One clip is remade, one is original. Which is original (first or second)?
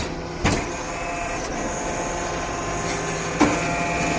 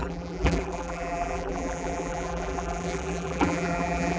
first